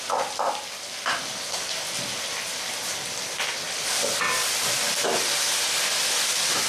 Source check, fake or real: real